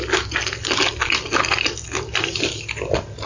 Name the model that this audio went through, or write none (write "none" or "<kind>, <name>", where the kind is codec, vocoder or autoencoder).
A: none